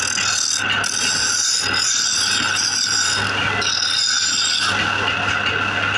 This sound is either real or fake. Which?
real